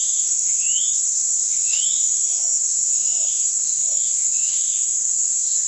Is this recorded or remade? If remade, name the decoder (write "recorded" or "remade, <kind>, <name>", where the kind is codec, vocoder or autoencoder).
remade, autoencoder, DAC-VAE